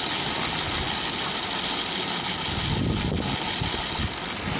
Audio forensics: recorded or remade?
recorded